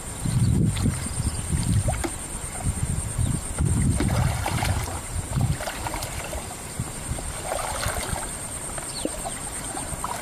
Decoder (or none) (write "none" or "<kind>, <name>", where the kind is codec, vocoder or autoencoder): vocoder, BigVGAN v2